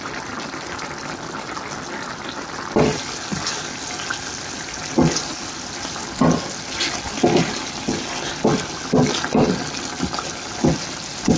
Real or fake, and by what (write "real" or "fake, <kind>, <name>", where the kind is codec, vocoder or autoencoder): real